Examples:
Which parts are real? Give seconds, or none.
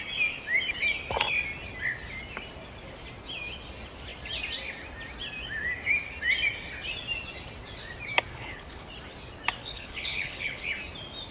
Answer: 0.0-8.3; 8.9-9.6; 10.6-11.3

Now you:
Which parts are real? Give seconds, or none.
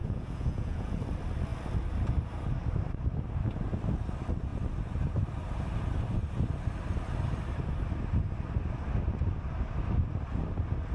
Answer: 0.9-10.9